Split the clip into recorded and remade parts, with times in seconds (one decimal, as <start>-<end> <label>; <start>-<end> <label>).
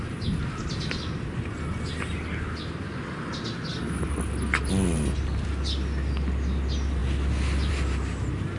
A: 0.0-8.6 recorded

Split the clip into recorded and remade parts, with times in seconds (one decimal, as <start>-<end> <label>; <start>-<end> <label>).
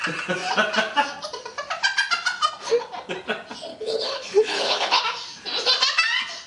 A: 0.0-3.7 recorded; 3.7-5.0 remade; 5.0-6.5 recorded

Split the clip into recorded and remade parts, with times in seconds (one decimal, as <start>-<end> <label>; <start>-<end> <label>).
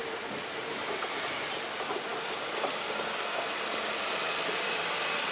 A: 0.0-5.3 recorded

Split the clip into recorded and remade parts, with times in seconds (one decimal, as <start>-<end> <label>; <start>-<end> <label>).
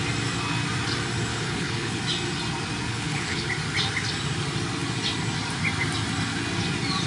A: 0.0-1.3 recorded; 1.3-2.0 remade; 2.0-2.9 recorded; 2.9-3.5 remade; 3.5-7.1 recorded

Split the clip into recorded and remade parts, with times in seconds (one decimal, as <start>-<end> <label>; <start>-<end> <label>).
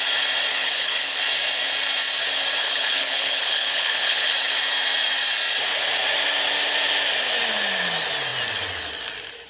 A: 0.0-0.5 recorded; 0.5-1.2 remade; 1.2-2.6 recorded; 2.6-4.3 remade; 4.3-9.5 recorded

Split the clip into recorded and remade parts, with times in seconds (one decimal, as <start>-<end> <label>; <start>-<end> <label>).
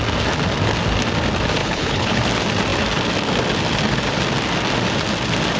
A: 0.0-1.6 recorded; 1.6-2.2 remade; 2.2-5.6 recorded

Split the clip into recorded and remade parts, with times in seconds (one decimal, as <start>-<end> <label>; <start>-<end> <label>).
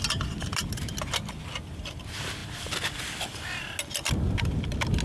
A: 0.0-5.0 recorded